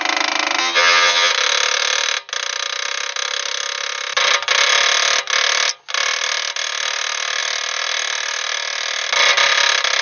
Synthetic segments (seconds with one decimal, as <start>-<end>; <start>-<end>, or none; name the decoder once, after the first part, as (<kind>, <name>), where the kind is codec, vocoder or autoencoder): 0.6-1.3 (vocoder, HiFi-GAN)